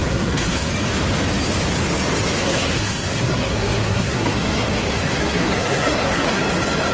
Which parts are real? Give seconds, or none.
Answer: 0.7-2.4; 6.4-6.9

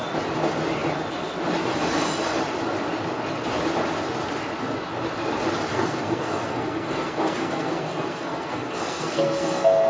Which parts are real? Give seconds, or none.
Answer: 0.0-5.7

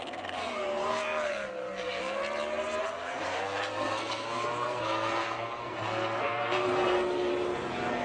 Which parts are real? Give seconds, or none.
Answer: 2.2-2.8; 7.3-8.0

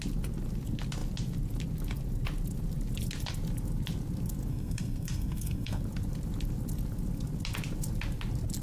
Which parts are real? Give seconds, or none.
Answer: 0.0-4.5; 5.8-8.6

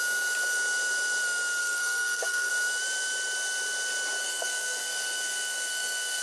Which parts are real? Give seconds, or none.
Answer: 0.0-1.6; 2.5-4.2

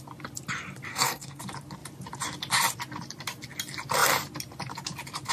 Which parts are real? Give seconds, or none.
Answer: 0.0-0.9; 1.4-5.3